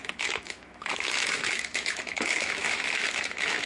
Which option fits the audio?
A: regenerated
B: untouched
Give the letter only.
A